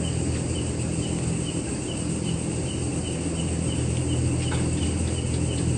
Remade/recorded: recorded